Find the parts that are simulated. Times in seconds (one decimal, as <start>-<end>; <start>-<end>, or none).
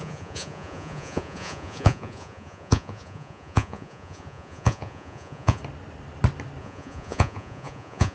0.0-5.6; 6.6-8.1